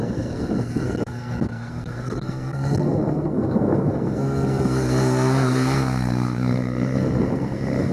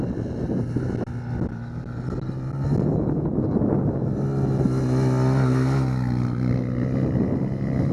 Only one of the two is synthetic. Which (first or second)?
first